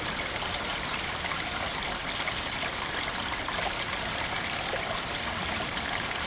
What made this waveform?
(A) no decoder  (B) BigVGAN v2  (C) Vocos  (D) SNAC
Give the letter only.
A